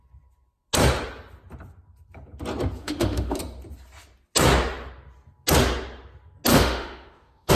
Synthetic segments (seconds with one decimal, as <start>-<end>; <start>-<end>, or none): 2.8-3.4; 6.5-7.5